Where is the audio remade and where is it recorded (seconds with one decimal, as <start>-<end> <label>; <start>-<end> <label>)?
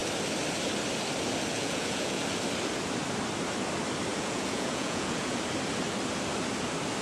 0.0-1.5 recorded; 1.5-2.2 remade; 2.2-4.1 recorded; 4.1-5.4 remade; 5.4-7.0 recorded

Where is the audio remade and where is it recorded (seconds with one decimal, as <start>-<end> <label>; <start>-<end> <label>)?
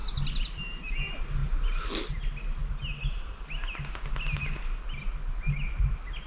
0.0-6.3 recorded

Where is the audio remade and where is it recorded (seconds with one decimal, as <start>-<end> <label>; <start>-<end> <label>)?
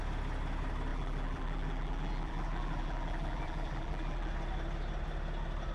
0.0-0.9 recorded; 0.9-4.3 remade; 4.3-5.7 recorded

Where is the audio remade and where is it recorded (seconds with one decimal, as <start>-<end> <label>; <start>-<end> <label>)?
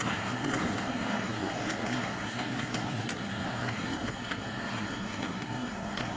0.0-6.2 remade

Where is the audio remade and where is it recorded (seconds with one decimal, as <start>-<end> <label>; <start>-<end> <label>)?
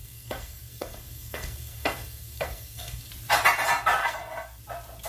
0.0-3.1 remade; 3.1-4.0 recorded; 4.0-4.6 remade; 4.6-5.1 recorded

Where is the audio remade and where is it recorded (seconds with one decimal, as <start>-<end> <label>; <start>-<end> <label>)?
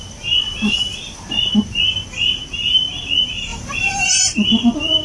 0.0-5.0 recorded